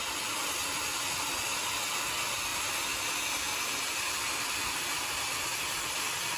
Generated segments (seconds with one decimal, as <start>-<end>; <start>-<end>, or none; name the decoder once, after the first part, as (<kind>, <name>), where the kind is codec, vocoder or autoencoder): none